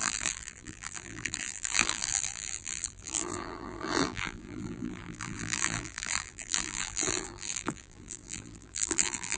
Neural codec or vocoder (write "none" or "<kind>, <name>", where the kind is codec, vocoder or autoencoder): vocoder, BigVGAN v2